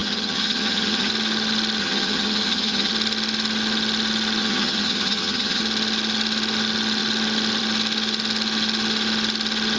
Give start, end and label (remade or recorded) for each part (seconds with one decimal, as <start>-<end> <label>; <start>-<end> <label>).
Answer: 0.0-1.1 remade; 1.1-1.8 recorded; 1.8-2.9 remade; 2.9-4.4 recorded; 4.4-5.6 remade; 5.6-9.8 recorded